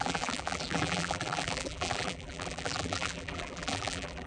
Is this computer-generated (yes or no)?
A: yes